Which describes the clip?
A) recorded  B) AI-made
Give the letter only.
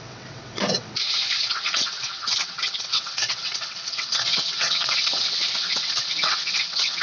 B